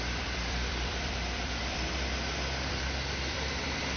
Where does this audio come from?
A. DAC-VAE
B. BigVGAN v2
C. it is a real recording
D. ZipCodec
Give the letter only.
B